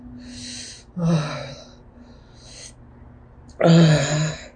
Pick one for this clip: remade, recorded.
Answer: recorded